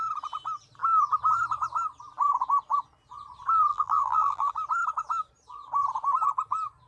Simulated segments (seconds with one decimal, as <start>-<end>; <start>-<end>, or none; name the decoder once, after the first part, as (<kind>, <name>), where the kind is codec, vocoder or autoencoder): 3.7-4.5 (vocoder, BigVGAN v2)